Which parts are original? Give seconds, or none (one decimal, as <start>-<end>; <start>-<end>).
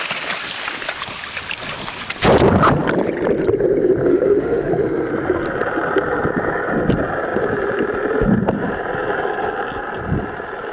0.0-4.1; 4.7-10.7